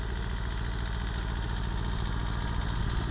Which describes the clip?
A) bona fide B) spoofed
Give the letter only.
A